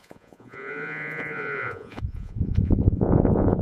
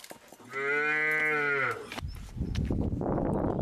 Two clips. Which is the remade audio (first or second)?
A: first